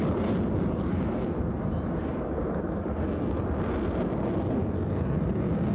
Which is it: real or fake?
real